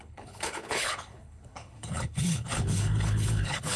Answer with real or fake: fake